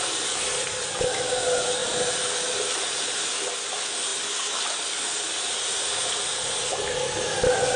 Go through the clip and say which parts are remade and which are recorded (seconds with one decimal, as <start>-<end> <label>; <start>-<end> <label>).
0.0-7.8 recorded